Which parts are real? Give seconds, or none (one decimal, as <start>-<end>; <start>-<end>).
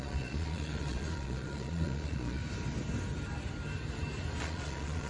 2.4-4.4